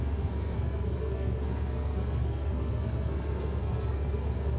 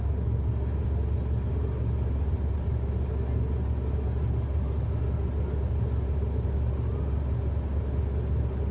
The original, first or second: second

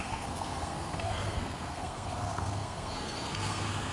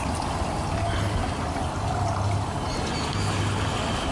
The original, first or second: second